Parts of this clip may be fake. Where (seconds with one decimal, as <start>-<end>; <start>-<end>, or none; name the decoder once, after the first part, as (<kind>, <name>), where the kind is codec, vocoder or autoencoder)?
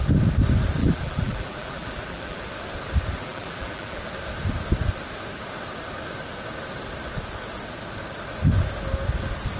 0.8-2.4 (vocoder, BigVGAN v2); 3.2-4.0